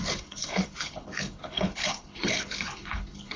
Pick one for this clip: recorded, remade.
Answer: remade